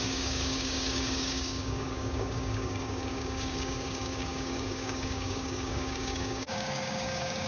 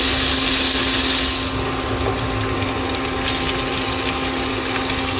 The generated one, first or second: first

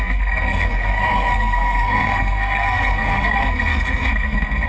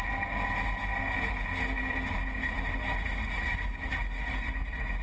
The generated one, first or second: first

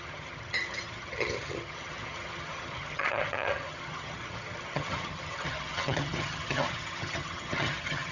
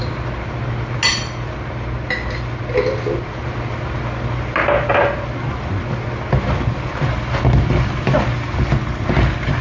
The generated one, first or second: first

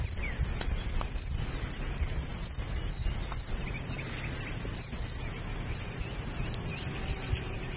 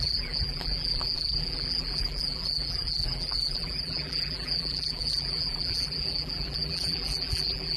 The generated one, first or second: second